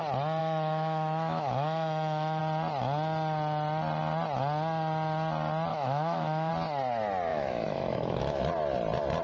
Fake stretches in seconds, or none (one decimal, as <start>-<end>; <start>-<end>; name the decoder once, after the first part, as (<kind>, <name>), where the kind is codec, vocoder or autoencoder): 0.4-2.4 (autoencoder, DAC-VAE); 5.7-6.5; 7.3-8.4